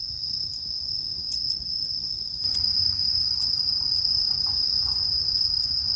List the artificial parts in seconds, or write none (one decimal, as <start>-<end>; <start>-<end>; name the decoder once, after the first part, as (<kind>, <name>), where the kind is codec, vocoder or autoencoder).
0.0-6.0 (vocoder, Vocos)